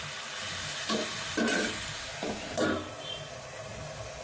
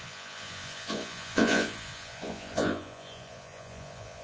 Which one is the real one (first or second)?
first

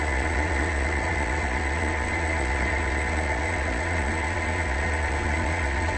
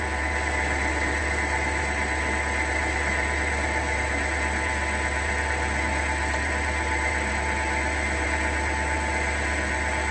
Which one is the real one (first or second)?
second